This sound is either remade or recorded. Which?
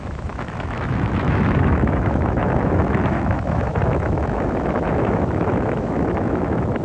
remade